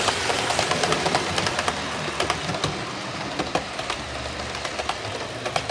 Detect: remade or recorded remade